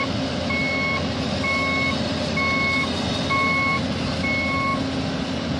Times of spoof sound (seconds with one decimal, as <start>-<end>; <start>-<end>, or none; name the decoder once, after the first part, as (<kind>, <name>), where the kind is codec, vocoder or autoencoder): none